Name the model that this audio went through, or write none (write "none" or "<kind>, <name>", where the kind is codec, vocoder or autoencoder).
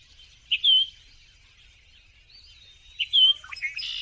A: none